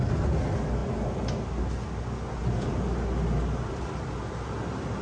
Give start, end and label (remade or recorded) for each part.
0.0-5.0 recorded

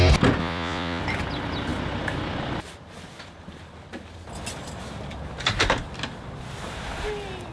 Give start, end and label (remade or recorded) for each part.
0.0-0.4 recorded; 0.4-1.0 remade; 1.0-7.5 recorded

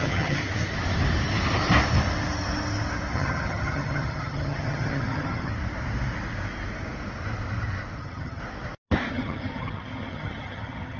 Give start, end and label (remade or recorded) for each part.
0.0-0.4 remade; 0.4-3.1 recorded; 3.1-5.5 remade; 5.5-8.0 recorded; 8.0-8.4 remade; 8.4-9.1 recorded; 9.1-11.0 remade

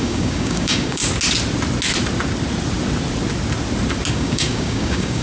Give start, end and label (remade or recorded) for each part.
0.0-1.0 remade; 1.0-4.1 recorded; 4.1-5.2 remade